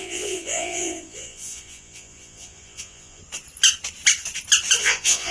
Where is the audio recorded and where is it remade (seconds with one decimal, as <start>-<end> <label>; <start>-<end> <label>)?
0.0-3.2 remade; 3.2-4.8 recorded; 4.8-5.3 remade